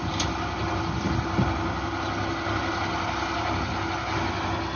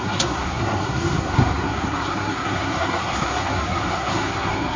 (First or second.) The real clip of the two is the first